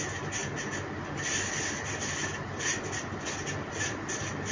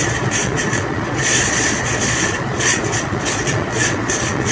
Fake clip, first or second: second